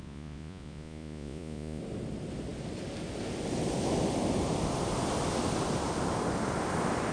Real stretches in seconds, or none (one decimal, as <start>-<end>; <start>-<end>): 1.8-7.1